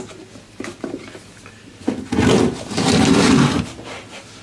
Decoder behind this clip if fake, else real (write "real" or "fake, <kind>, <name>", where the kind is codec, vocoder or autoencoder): real